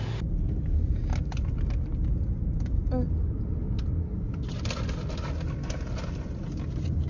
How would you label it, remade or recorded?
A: recorded